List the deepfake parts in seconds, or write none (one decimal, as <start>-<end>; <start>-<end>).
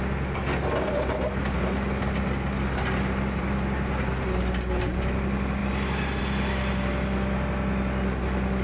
none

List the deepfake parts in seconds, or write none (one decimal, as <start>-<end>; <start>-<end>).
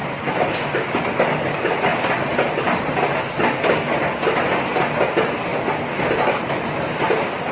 0.0-0.5; 1.9-3.1; 5.5-6.0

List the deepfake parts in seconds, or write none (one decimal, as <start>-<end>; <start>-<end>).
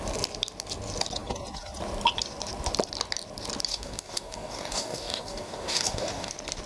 3.7-6.3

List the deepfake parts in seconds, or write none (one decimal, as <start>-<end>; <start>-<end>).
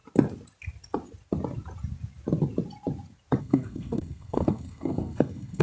3.4-5.6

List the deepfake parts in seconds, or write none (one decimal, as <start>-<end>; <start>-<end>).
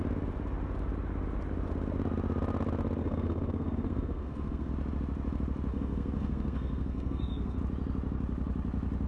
3.0-4.7; 5.7-7.6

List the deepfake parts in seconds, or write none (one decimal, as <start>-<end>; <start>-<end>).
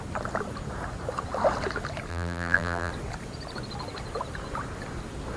2.1-2.9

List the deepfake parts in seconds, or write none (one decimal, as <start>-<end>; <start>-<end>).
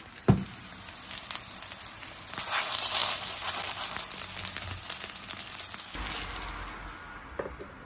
3.0-3.5